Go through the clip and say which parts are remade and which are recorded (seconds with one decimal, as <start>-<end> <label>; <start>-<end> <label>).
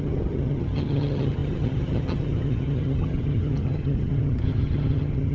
0.0-5.3 remade